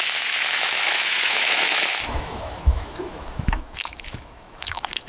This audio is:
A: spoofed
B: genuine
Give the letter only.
A